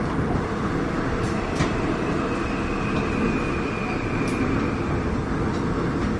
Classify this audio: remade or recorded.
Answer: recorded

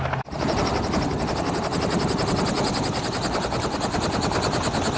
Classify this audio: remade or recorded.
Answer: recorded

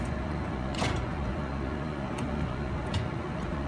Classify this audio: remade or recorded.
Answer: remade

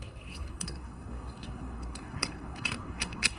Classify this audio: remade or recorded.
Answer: remade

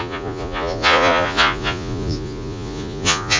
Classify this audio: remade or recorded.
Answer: remade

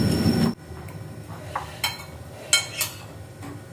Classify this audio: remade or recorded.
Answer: recorded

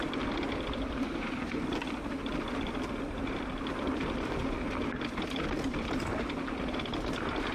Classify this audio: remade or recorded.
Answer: remade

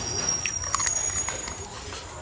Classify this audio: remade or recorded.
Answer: recorded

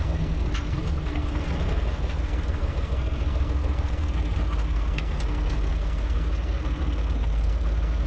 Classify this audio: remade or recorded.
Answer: remade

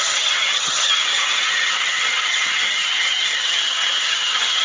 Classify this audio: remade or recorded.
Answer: remade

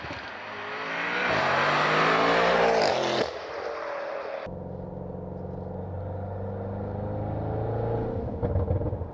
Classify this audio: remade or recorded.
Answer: recorded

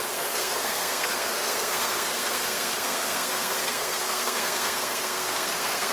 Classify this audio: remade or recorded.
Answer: remade